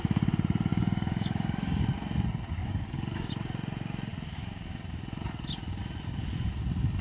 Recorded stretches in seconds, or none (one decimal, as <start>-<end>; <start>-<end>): 0.0-0.7; 1.8-2.6; 3.3-7.0